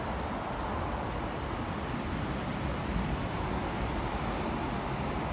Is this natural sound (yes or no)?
yes